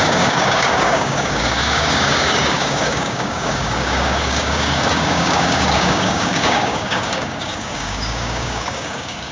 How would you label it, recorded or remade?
remade